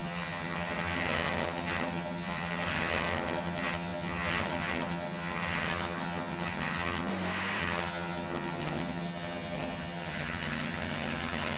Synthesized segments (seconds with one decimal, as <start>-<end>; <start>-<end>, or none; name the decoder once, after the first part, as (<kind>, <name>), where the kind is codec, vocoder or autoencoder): 0.0-7.1 (vocoder, HiFi-GAN); 7.6-11.6